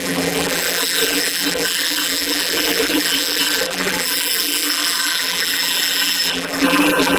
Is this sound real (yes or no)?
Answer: no